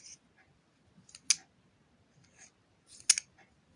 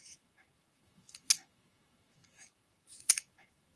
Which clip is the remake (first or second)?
second